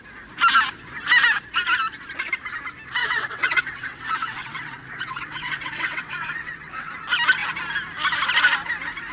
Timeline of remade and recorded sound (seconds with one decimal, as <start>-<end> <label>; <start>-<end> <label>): 0.0-3.0 recorded; 3.0-6.9 remade; 6.9-9.1 recorded